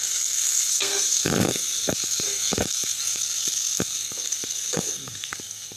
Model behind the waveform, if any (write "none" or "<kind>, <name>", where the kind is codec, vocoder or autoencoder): codec, SNAC